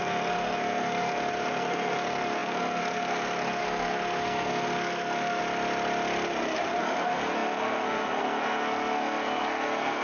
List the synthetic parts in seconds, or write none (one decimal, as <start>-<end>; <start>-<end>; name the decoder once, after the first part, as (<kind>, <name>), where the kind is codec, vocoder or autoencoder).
0.0-5.4 (codec, SNAC); 6.8-10.0